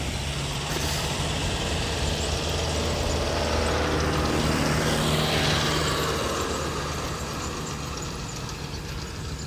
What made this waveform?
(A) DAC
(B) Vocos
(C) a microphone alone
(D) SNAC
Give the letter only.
C